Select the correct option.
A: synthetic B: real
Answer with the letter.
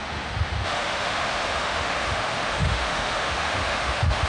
A